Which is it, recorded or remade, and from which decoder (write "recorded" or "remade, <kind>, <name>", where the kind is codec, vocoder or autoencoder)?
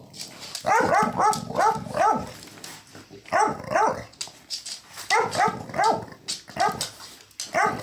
recorded